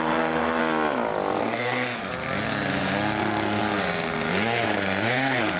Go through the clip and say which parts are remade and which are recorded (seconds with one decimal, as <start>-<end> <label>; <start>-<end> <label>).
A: 0.0-0.6 remade; 0.6-1.4 recorded; 1.4-2.1 remade; 2.1-3.2 recorded; 3.2-3.6 remade; 3.6-4.3 recorded; 4.3-5.6 remade

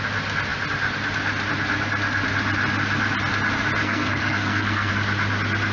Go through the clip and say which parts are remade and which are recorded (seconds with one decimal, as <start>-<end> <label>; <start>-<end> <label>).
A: 0.0-3.8 recorded; 3.8-4.9 remade; 4.9-5.7 recorded

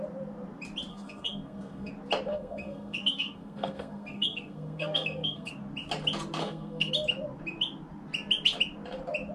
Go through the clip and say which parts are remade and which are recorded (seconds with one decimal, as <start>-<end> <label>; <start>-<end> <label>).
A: 0.0-0.9 recorded; 0.9-1.9 remade; 1.9-2.3 recorded; 2.3-5.5 remade; 5.5-6.4 recorded; 6.4-6.9 remade; 6.9-9.3 recorded

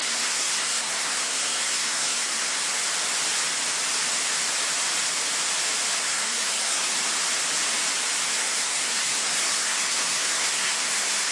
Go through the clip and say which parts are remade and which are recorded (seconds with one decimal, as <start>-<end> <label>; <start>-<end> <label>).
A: 0.0-2.6 remade; 2.6-6.0 recorded; 6.0-6.9 remade; 6.9-8.3 recorded; 8.3-11.3 remade

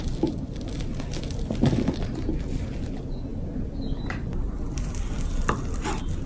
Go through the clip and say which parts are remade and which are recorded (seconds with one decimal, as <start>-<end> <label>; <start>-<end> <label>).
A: 0.0-6.3 recorded

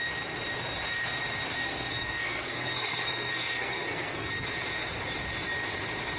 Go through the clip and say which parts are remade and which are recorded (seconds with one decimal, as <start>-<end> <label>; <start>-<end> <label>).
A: 0.0-1.6 recorded; 1.6-4.3 remade; 4.3-6.2 recorded

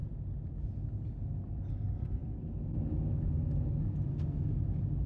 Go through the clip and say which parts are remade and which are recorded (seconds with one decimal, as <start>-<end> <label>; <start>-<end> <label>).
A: 0.0-4.1 recorded; 4.1-4.6 remade; 4.6-5.1 recorded